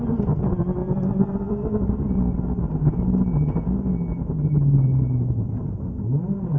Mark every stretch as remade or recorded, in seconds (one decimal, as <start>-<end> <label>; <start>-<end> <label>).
0.0-0.8 recorded; 0.8-2.2 remade; 2.2-4.1 recorded; 4.1-6.6 remade